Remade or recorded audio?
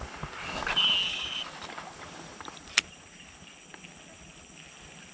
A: recorded